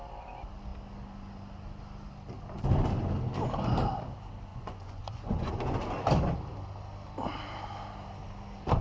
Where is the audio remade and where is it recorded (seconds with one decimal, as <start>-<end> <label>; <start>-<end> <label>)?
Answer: 0.0-4.5 recorded; 4.5-5.5 remade; 5.5-8.8 recorded